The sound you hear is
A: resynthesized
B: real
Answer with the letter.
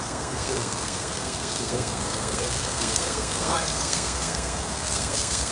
A